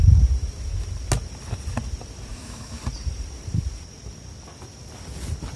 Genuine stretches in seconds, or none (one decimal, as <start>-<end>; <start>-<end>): 0.0-2.3; 2.8-5.6